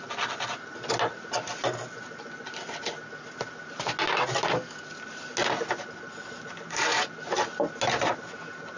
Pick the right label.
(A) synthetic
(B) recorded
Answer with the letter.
B